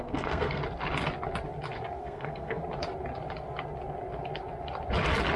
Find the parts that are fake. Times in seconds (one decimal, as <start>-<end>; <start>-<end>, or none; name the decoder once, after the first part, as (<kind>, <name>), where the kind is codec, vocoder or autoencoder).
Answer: 0.0-0.6 (codec, SNAC); 2.0-2.6